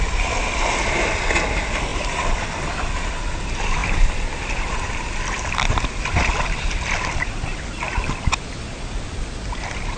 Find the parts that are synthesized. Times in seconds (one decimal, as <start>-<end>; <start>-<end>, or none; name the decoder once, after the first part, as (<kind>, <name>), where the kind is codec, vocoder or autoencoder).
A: none